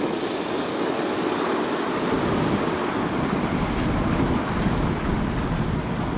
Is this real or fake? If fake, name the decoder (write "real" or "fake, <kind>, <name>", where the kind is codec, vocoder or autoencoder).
real